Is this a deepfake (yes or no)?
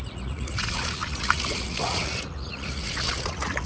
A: yes